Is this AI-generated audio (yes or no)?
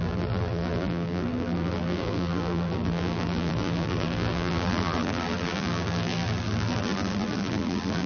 yes